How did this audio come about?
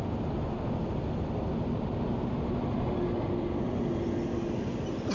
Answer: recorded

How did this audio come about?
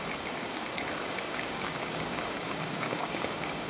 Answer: remade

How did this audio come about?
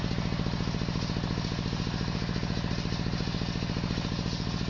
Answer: recorded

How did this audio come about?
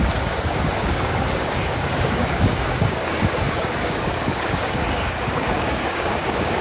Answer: remade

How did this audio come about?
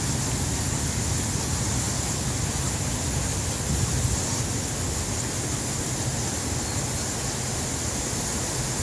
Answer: recorded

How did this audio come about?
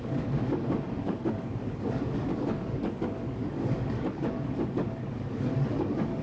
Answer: remade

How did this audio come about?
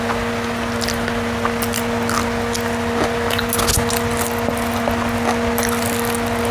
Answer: recorded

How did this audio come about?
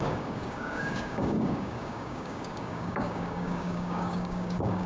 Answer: remade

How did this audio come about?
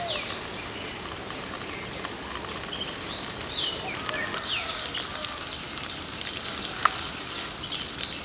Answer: recorded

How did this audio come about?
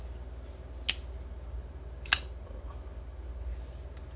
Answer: recorded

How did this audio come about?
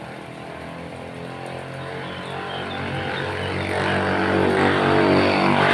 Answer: recorded